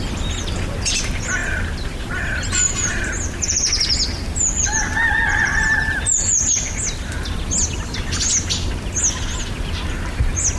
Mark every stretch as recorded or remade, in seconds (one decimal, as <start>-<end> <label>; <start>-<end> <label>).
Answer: 0.0-1.4 recorded; 1.4-2.9 remade; 2.9-10.6 recorded